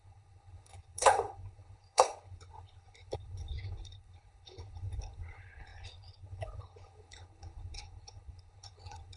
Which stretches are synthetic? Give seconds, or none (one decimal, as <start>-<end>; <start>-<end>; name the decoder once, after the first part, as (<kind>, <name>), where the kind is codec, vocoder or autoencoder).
0.0-9.2 (codec, HILCodec)